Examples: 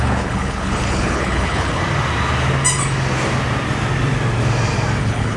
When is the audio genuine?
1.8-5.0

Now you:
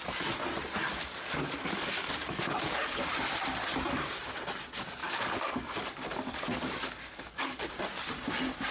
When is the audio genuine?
0.0-0.9; 3.1-5.0; 7.7-8.7

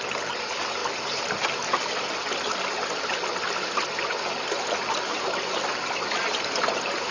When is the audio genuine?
0.0-7.1

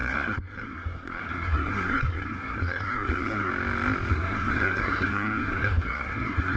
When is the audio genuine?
3.5-4.1

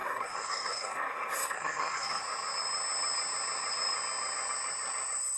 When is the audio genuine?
2.2-5.4